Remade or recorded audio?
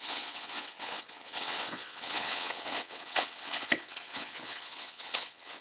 remade